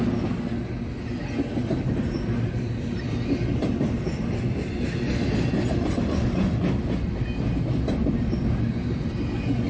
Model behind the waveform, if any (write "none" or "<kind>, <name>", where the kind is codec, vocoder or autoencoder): none